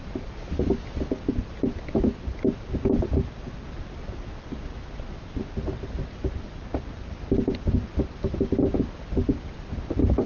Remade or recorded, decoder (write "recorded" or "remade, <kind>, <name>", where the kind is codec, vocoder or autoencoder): recorded